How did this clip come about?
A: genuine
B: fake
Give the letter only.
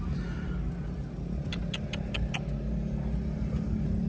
A